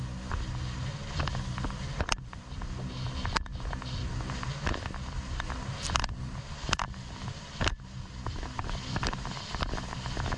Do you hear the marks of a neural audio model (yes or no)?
no